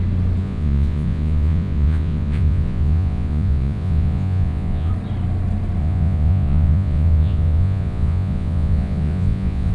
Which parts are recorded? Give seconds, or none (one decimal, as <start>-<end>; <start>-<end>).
0.0-0.4; 4.9-5.8